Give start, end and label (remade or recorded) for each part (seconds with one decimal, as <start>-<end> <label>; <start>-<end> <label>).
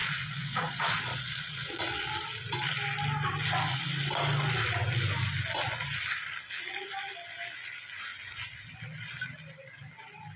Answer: 0.0-2.1 remade; 2.1-10.4 recorded